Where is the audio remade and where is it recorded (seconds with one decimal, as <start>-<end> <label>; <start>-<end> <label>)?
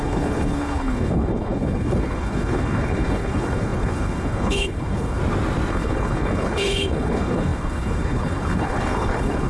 0.0-5.2 remade; 5.2-5.7 recorded; 5.7-9.5 remade